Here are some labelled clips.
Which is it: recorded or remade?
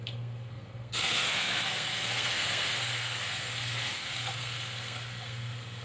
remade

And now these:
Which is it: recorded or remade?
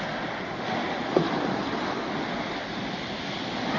recorded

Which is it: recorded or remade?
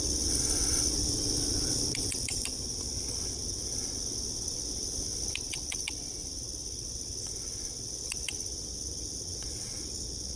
remade